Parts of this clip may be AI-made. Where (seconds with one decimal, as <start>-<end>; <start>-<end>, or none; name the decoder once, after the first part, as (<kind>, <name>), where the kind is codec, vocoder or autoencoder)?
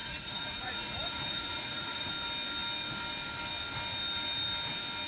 0.0-2.1 (vocoder, Vocos)